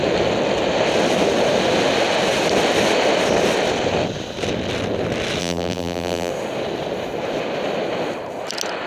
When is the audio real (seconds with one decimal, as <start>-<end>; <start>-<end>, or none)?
0.0-5.4; 6.3-8.9